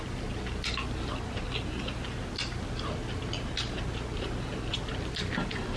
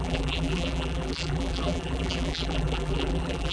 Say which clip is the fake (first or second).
second